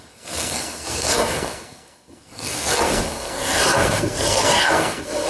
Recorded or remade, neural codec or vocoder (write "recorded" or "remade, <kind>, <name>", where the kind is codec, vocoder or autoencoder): remade, codec, SNAC